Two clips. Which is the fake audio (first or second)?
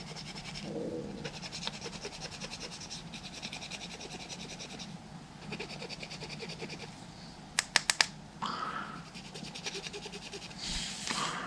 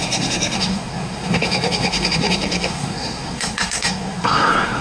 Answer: second